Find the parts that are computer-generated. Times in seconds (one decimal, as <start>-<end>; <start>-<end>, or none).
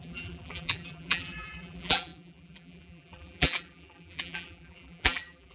0.0-5.5